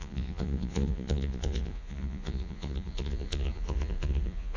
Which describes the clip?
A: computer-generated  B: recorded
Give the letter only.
A